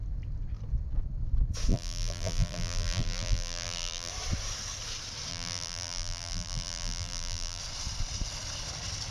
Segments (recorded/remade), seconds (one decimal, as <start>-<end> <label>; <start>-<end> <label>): 0.0-1.7 recorded; 1.7-4.1 remade; 4.1-5.3 recorded; 5.3-7.6 remade; 7.6-9.1 recorded